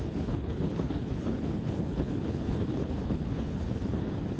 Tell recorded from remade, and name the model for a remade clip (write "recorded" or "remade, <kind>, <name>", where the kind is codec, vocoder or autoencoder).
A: remade, codec, HILCodec